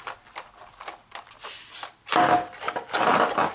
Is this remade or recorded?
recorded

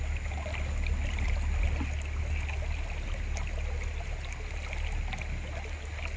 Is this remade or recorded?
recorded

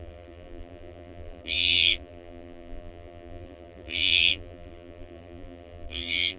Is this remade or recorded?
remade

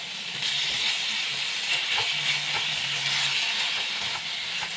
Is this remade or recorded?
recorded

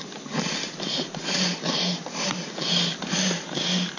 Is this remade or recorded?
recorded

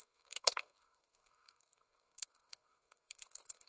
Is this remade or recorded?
remade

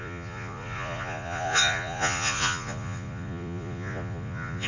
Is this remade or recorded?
remade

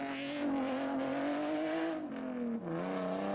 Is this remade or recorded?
recorded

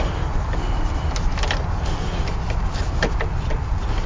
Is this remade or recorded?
recorded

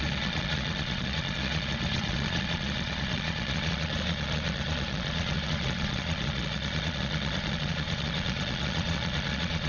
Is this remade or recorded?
remade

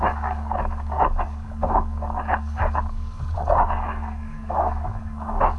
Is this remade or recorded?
remade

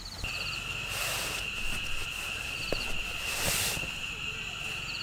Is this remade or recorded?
recorded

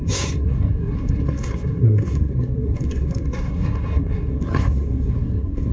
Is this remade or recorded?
remade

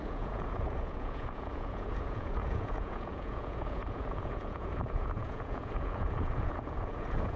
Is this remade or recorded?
remade